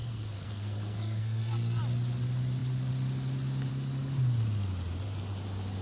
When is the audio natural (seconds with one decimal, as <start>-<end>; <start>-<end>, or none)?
1.8-5.8

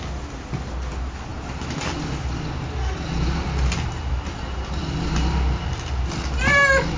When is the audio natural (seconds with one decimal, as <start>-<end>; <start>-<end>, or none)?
0.0-7.0

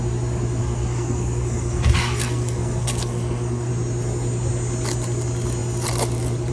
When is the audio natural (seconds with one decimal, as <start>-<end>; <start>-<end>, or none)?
0.0-0.6; 3.7-6.5

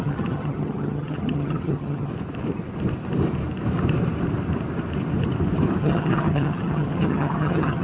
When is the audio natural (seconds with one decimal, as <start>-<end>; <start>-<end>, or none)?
2.1-5.8